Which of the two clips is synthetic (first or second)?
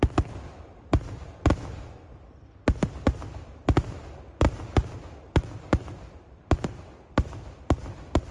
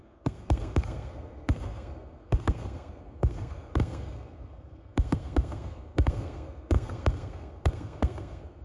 second